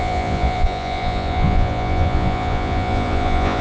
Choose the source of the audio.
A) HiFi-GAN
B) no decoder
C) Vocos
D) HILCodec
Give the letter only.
C